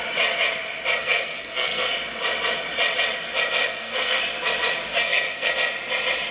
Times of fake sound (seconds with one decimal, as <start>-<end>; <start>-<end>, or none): 1.0-1.9; 3.6-4.2; 4.9-5.5